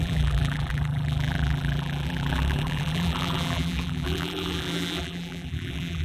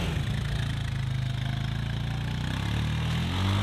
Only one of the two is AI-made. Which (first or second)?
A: first